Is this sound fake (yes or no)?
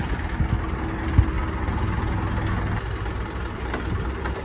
no